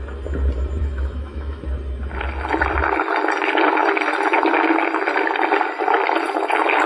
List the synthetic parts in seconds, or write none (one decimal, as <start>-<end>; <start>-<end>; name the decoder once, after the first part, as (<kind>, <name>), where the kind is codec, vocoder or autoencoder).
0.8-1.6 (autoencoder, DAC-VAE)